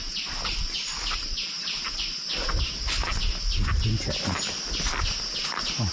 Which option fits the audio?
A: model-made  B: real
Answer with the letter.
B